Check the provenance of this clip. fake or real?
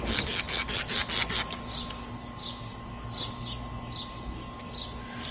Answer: real